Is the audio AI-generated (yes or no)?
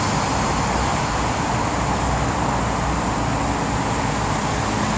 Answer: no